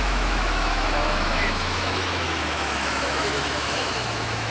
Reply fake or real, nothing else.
fake